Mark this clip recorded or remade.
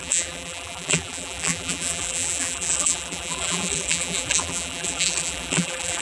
remade